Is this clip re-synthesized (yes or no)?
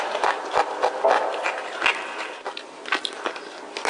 no